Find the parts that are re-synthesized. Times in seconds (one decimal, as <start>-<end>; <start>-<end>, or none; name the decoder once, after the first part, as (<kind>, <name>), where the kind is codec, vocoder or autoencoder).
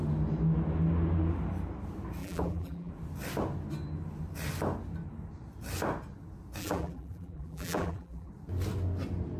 2.2-2.9 (vocoder, BigVGAN v2); 6.6-8.3